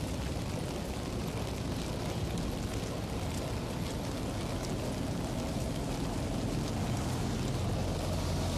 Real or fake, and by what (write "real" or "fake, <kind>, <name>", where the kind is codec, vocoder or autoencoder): real